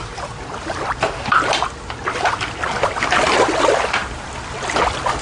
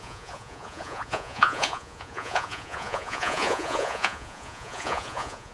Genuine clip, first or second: first